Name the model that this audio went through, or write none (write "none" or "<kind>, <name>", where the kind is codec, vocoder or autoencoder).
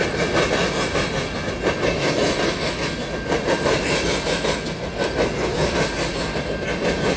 none